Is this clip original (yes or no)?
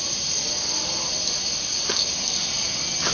yes